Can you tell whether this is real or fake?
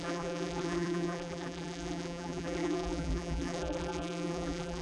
fake